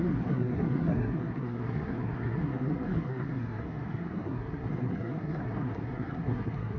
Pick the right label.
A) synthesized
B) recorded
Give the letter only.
A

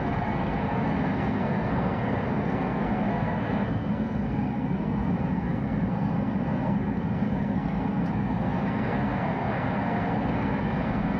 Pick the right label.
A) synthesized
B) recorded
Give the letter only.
A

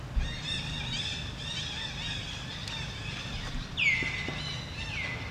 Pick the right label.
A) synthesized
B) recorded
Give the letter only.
B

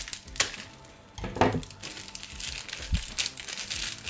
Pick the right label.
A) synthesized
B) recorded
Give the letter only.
B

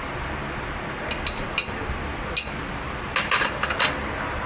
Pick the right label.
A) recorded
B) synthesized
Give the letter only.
A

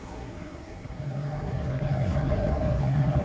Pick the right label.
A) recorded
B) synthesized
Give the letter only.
B